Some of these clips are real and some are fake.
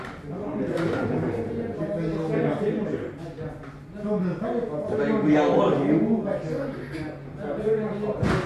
real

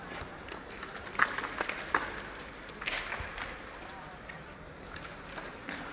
real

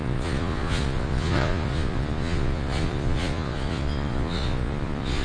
fake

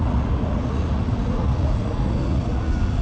fake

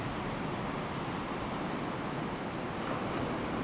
real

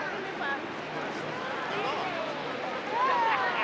real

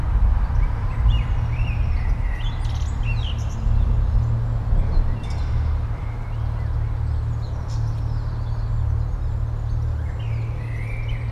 real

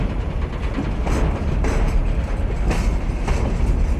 real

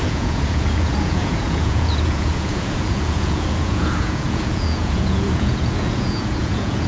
fake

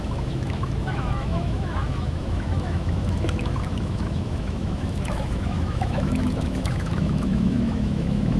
fake